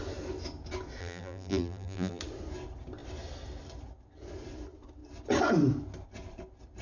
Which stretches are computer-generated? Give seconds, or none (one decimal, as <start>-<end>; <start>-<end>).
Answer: 1.0-2.2